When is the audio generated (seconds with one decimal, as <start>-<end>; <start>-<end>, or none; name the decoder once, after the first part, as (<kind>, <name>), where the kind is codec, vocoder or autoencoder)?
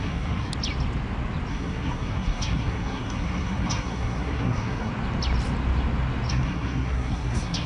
0.0-0.5 (codec, SNAC); 1.5-4.9; 6.3-7.7